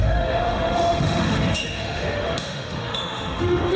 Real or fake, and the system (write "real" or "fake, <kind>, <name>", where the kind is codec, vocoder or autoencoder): fake, autoencoder, DAC-VAE